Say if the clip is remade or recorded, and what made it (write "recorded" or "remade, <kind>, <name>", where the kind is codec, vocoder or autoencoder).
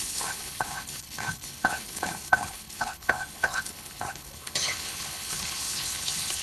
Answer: remade, codec, HILCodec